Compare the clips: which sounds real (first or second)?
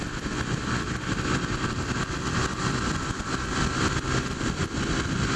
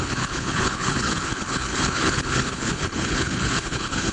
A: first